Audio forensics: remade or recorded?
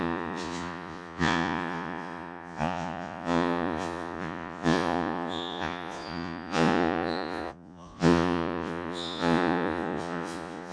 remade